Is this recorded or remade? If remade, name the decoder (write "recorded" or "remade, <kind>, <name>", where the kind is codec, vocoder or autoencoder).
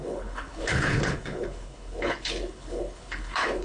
remade, codec, HILCodec